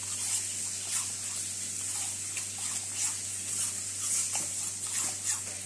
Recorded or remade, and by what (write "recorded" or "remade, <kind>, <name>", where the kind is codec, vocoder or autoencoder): recorded